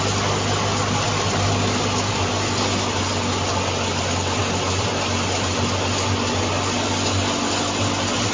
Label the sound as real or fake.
real